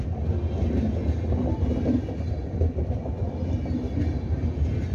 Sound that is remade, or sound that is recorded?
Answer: recorded